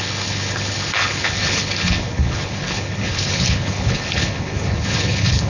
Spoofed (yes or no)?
yes